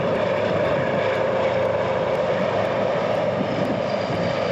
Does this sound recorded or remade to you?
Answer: remade